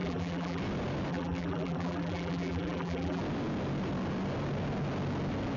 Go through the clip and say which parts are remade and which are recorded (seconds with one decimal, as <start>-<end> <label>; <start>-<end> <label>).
0.0-0.6 remade; 0.6-1.1 recorded; 1.1-3.2 remade; 3.2-5.6 recorded